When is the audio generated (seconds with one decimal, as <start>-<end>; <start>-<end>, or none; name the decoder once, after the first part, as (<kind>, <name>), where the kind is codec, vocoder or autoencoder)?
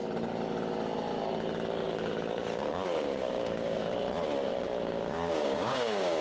1.8-3.9 (codec, DAC); 4.5-6.2